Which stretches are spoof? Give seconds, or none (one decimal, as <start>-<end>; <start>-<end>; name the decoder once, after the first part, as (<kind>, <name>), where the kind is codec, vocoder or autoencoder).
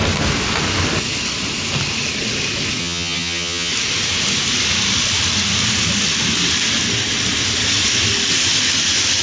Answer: 2.8-3.7 (vocoder, HiFi-GAN)